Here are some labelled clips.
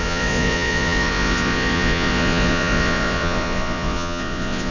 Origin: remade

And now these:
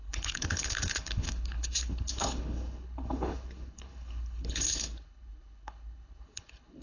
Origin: remade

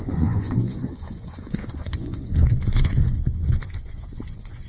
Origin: remade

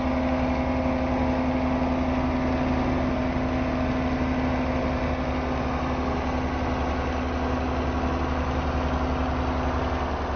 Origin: recorded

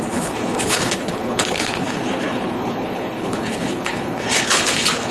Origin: remade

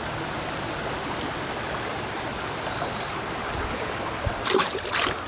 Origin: recorded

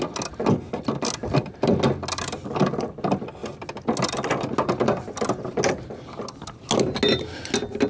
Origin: recorded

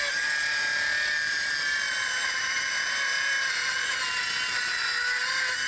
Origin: recorded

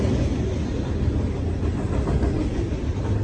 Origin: recorded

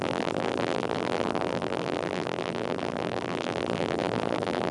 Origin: remade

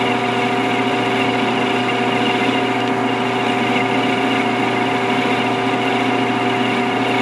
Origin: recorded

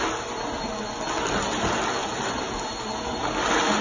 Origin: recorded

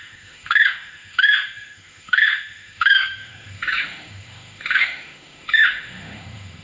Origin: remade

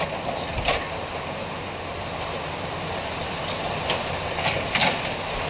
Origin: recorded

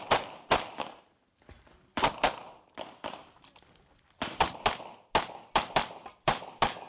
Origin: recorded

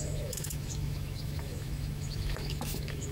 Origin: remade